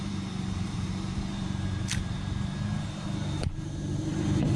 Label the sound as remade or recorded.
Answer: remade